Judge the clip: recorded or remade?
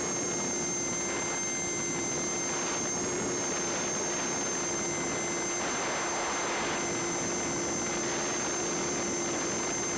recorded